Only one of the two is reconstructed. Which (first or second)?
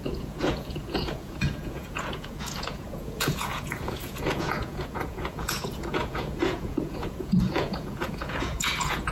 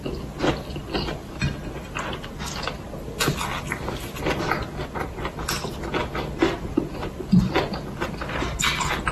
first